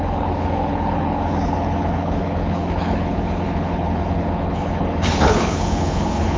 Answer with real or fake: fake